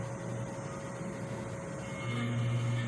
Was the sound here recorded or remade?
recorded